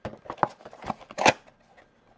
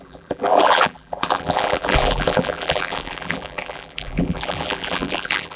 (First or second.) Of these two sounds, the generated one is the second